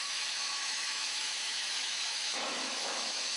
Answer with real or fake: fake